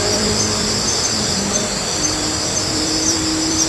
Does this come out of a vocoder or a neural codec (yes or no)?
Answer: yes